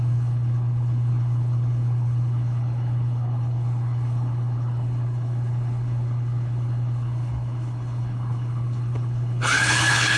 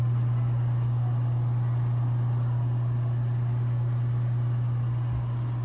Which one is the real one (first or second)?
second